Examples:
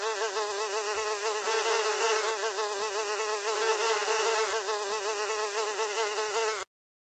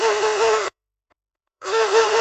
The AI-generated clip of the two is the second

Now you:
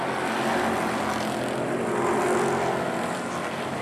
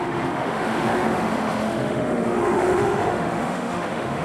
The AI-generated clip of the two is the second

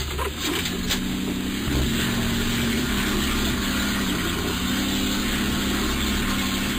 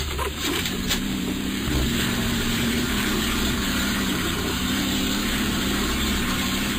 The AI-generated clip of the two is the second